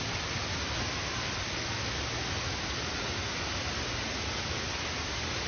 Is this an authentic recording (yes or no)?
yes